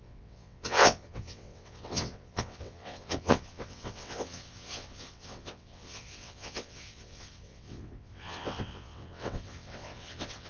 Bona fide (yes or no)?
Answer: no